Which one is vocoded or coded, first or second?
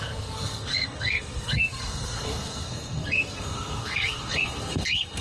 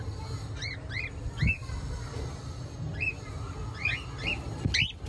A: first